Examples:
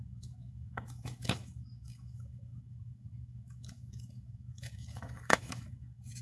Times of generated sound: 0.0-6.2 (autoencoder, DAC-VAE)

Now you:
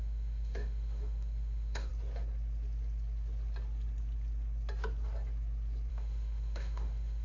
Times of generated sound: 0.0-1.9 (autoencoder, DAC-VAE); 5.9-7.2